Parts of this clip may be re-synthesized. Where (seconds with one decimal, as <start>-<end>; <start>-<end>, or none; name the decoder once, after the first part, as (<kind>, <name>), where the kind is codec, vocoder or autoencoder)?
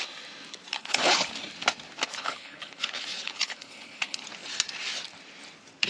0.7-1.3 (codec, HILCodec); 2.1-4.2